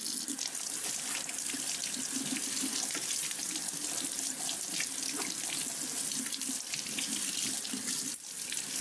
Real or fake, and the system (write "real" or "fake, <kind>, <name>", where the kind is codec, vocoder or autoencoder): real